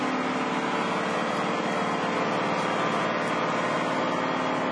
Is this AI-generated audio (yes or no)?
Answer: no